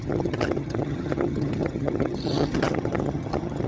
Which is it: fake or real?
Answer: fake